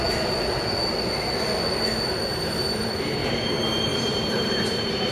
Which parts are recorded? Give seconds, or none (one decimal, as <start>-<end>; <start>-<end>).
0.0-2.3; 3.5-3.9